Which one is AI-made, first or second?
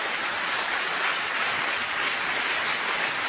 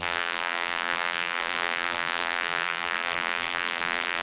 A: second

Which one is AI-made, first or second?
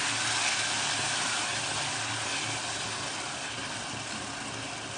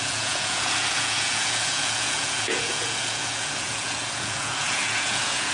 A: second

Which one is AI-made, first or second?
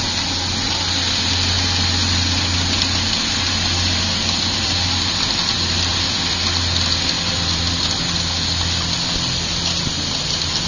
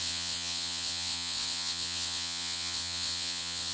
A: second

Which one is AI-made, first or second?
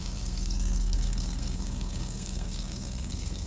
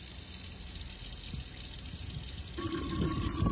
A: first